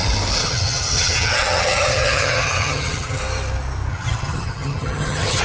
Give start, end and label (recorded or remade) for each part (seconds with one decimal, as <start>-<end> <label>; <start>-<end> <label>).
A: 0.0-0.4 recorded; 0.4-3.2 remade; 3.2-3.9 recorded; 3.9-5.4 remade